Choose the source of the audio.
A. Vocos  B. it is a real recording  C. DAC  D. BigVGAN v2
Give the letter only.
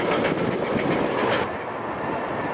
B